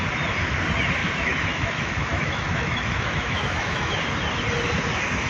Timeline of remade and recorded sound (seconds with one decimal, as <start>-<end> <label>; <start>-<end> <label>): 0.0-1.0 recorded; 1.0-3.9 remade; 3.9-5.3 recorded